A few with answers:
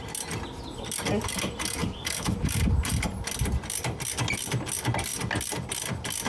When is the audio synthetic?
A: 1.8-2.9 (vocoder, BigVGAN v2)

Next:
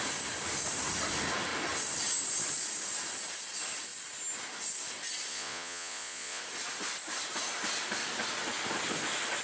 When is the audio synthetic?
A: 5.3-6.4 (vocoder, Vocos)

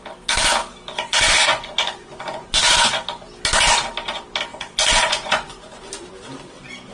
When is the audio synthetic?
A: 0.9-2.9 (vocoder, Vocos); 4.5-5.9

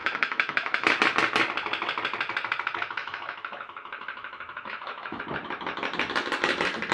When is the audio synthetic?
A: 0.0-1.0 (autoencoder, DAC-VAE); 3.0-5.2